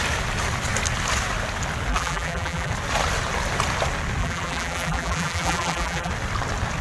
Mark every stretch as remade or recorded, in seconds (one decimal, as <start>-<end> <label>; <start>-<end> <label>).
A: 0.0-1.9 recorded; 1.9-2.7 remade; 2.7-4.2 recorded; 4.2-6.1 remade; 6.1-6.8 recorded